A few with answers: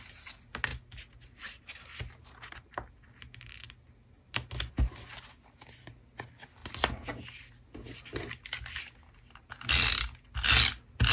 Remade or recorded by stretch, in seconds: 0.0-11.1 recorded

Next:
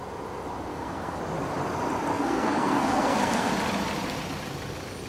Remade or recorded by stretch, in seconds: 0.0-0.7 recorded; 0.7-1.2 remade; 1.2-2.1 recorded; 2.1-3.5 remade; 3.5-5.1 recorded

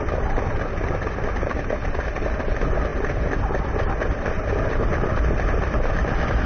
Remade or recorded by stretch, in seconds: 0.0-6.5 recorded

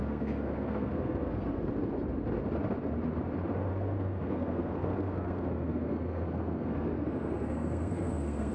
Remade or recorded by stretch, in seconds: 0.0-1.7 remade; 1.7-3.7 recorded; 3.7-8.5 remade

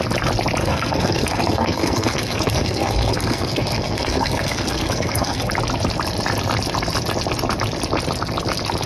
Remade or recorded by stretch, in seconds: 0.0-0.6 recorded; 0.6-5.5 remade; 5.5-8.9 recorded

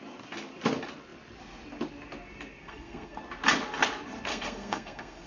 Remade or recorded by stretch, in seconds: 0.0-2.6 recorded; 2.6-3.2 remade; 3.2-4.3 recorded; 4.3-5.3 remade